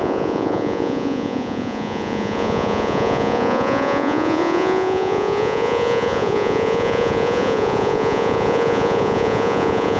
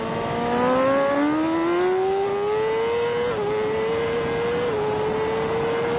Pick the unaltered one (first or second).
second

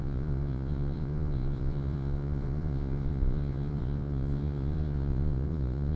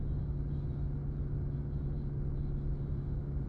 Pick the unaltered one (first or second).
second